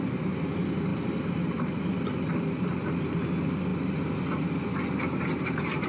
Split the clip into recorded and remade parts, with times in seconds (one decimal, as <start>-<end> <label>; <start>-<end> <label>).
0.0-5.9 recorded